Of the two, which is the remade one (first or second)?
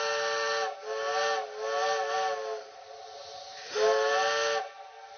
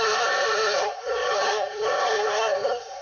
second